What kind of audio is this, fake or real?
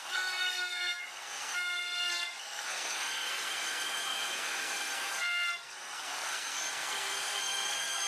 fake